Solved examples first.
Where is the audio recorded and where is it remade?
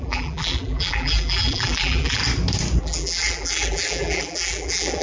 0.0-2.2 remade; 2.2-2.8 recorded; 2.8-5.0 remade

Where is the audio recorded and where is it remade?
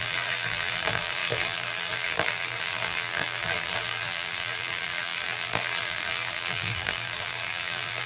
0.0-8.1 remade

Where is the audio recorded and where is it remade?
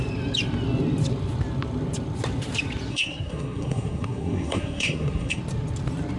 0.0-2.9 recorded; 2.9-5.4 remade; 5.4-6.2 recorded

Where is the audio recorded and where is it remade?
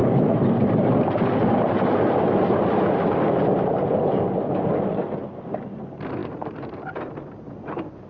0.0-2.7 remade; 2.7-8.1 recorded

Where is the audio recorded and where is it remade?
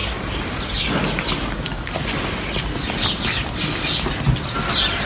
0.0-5.1 recorded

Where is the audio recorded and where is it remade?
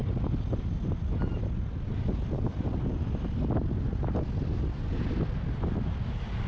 0.0-6.5 recorded